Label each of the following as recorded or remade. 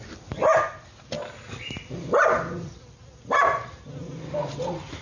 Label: recorded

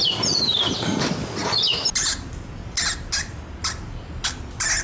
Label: recorded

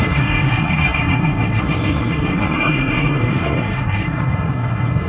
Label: remade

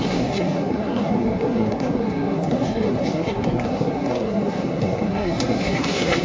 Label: remade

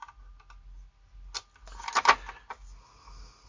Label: recorded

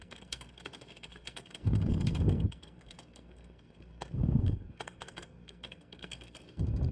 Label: remade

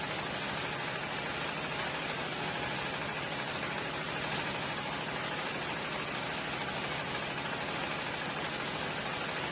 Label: recorded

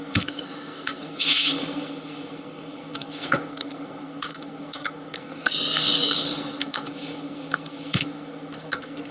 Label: remade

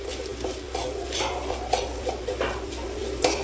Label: recorded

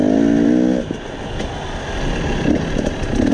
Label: recorded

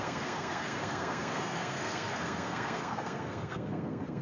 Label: remade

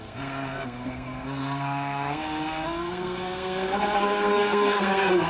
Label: remade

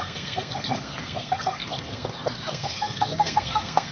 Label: remade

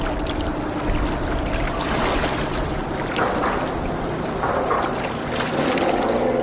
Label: recorded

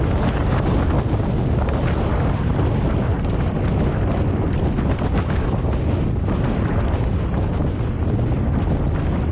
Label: recorded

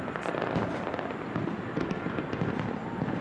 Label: recorded